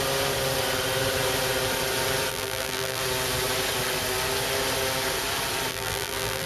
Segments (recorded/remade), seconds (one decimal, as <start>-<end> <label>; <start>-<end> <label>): 0.0-2.3 recorded; 2.3-3.0 remade; 3.0-5.7 recorded; 5.7-6.5 remade